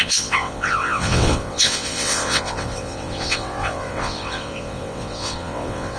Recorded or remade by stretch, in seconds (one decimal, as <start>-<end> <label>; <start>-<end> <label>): 0.0-6.0 remade